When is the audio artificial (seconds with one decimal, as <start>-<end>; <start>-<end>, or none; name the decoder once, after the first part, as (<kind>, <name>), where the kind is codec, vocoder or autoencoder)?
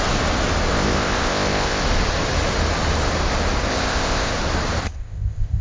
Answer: 0.7-1.8 (codec, ZipCodec); 3.7-4.3; 4.8-5.6